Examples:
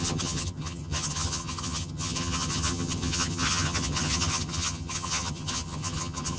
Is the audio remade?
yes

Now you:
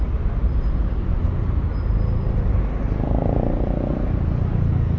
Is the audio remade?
no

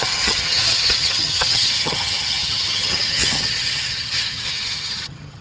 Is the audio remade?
yes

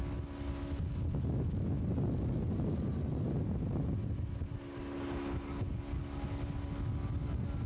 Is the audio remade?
no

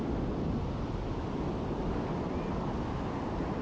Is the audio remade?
no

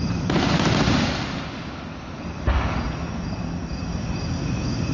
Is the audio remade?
no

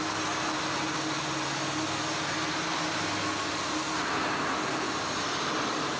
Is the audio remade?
no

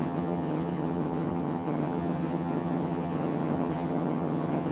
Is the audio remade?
yes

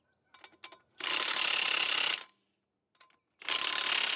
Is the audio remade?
no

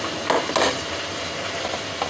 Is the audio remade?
no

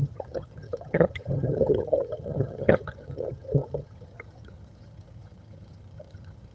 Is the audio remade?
yes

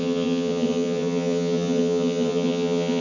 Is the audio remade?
yes